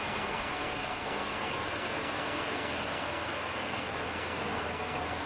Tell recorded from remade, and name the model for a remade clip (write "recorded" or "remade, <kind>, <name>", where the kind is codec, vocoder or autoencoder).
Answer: remade, codec, SNAC